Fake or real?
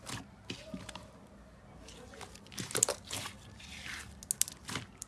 real